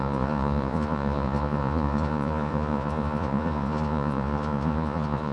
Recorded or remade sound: remade